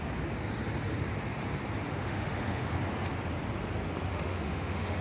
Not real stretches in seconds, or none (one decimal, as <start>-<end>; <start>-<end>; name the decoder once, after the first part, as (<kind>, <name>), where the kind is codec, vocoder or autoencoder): 1.9-2.7 (autoencoder, DAC-VAE); 4.1-5.0